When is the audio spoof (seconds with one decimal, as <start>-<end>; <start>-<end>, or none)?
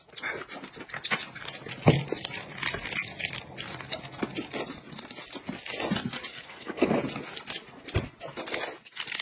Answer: 6.3-7.0